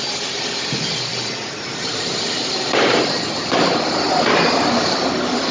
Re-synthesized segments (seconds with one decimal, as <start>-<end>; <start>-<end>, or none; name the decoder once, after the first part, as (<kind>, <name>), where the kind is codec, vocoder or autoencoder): none